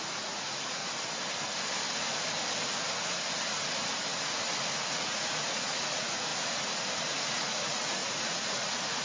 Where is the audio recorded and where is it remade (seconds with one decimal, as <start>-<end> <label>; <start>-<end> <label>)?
0.0-0.8 remade; 0.8-4.7 recorded; 4.7-6.3 remade; 6.3-7.0 recorded; 7.0-9.0 remade